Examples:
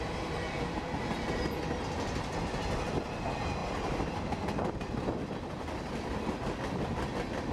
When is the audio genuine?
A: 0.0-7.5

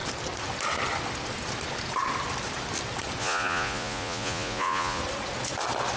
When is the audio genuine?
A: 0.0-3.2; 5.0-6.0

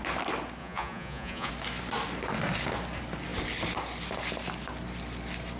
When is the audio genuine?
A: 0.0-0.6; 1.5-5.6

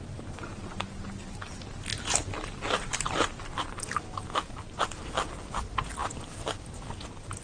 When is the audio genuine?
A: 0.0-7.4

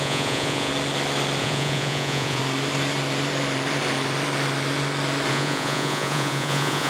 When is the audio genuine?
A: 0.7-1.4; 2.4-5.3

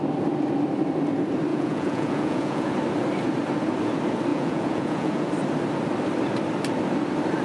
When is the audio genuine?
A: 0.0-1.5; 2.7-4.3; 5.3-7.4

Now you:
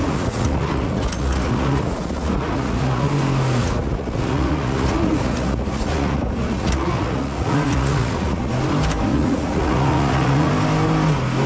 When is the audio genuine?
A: 3.1-3.6; 8.5-9.1; 10.5-11.5

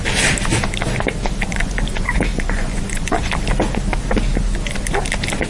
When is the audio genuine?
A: 0.0-1.5; 3.3-5.5